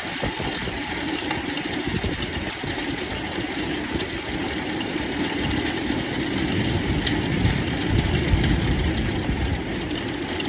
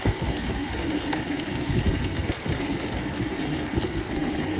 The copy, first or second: second